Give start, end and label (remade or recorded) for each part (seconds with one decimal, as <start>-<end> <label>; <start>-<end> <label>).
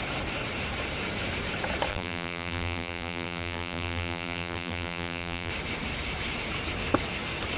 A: 0.0-1.9 recorded; 1.9-5.5 remade; 5.5-7.6 recorded